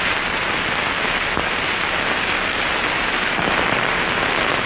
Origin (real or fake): real